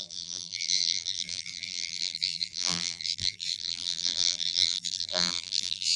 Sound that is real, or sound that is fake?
fake